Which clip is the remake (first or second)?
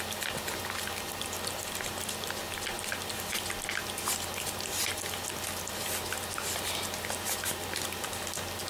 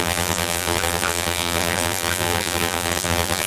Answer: second